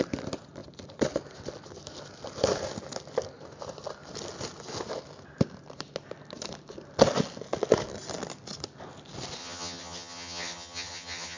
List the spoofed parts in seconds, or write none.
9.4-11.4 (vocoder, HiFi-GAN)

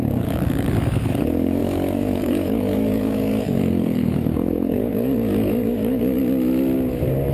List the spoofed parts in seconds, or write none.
0.0-6.2 (codec, DAC)

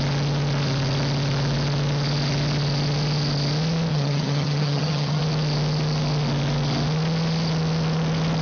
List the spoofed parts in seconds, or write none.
3.9-5.2 (vocoder, HiFi-GAN)